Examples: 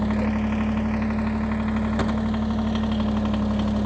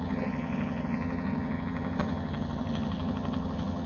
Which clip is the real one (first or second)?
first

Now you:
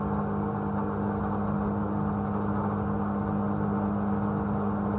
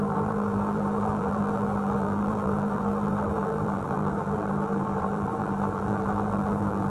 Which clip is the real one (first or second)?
first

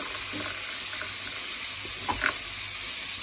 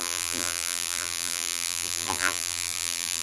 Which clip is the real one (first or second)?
first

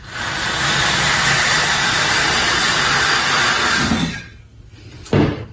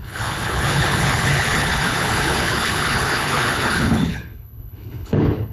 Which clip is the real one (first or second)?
first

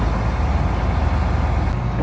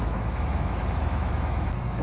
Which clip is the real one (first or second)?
first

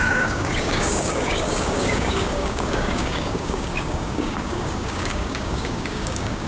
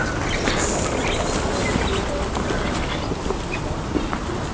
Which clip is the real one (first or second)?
second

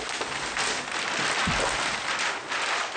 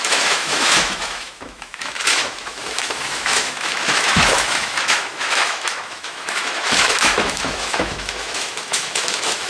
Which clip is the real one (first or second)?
first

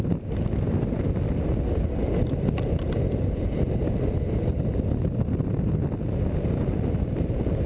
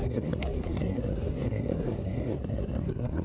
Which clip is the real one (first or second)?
first